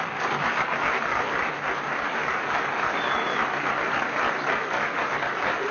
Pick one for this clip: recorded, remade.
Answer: recorded